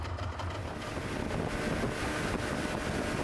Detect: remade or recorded recorded